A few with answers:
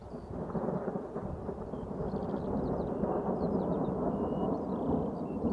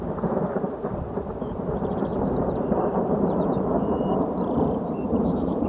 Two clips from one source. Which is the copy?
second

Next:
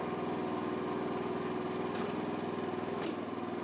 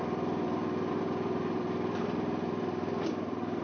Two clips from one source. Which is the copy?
second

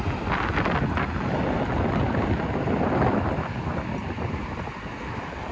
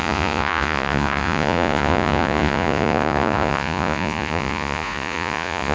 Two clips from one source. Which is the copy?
second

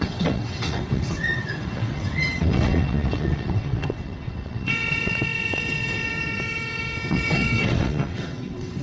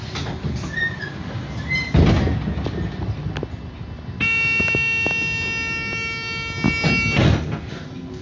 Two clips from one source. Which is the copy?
first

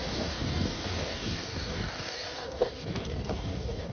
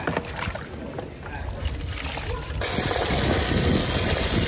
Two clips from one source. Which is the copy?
first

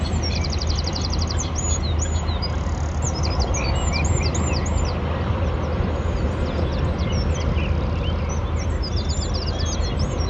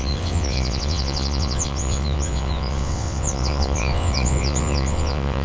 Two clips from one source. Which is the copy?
second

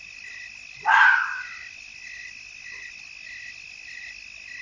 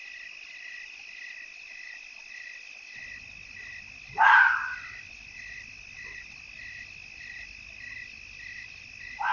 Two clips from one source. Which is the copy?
second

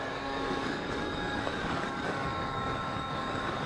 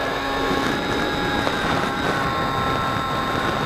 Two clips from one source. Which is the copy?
first